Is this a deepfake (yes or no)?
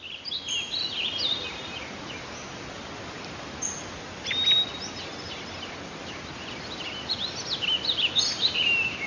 no